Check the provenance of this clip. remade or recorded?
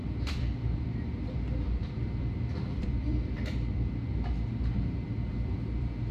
remade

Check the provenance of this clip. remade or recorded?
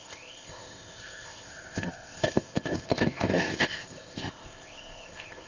remade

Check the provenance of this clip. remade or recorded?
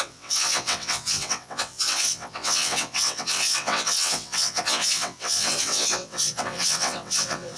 remade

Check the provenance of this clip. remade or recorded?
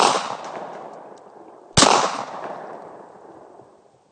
recorded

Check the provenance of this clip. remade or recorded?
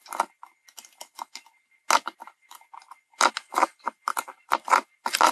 recorded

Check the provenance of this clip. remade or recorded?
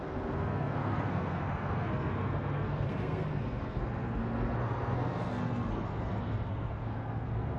remade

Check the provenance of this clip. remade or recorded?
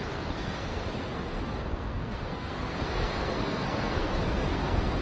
remade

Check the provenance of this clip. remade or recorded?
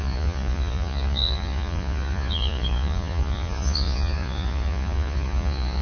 remade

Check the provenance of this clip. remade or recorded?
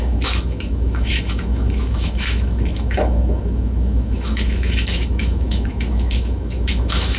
remade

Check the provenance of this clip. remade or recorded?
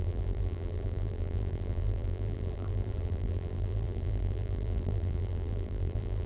remade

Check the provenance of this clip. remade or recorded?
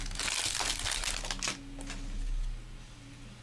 recorded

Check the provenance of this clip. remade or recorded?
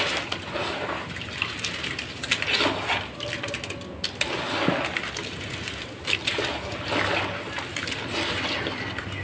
recorded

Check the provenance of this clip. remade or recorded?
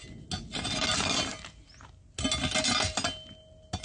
recorded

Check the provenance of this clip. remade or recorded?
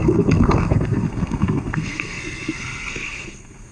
remade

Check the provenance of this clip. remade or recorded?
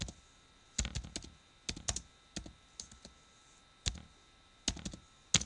recorded